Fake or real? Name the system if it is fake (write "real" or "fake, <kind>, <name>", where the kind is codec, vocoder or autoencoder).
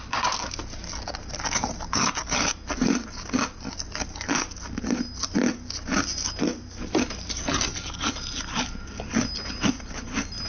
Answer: real